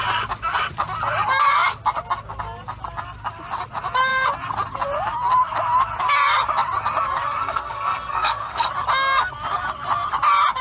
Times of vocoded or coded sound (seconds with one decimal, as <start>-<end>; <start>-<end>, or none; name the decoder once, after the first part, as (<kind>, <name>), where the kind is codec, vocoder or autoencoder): 7.4-8.7 (codec, SNAC)